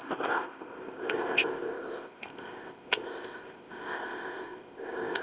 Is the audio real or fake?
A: fake